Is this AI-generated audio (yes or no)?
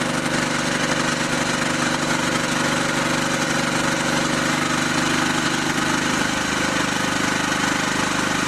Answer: no